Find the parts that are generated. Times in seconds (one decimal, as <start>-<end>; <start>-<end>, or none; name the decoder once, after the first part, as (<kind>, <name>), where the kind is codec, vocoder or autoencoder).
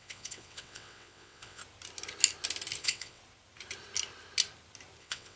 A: 0.0-1.6 (vocoder, WaveNeXt); 2.8-3.2; 5.0-5.4